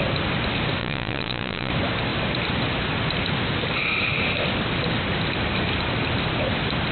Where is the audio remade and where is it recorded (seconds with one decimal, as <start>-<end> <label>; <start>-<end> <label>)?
0.0-0.8 recorded; 0.8-1.7 remade; 1.7-6.9 recorded